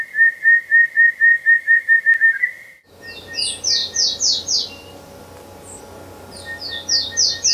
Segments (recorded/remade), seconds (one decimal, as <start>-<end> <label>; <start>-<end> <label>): 0.0-1.3 recorded; 1.3-2.0 remade; 2.0-7.5 recorded